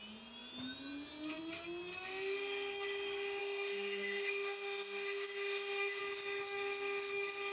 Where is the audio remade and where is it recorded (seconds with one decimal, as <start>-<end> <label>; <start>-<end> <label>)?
0.0-3.4 recorded; 3.4-6.0 remade; 6.0-7.5 recorded